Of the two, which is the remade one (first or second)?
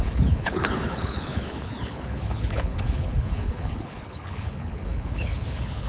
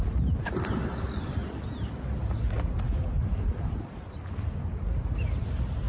first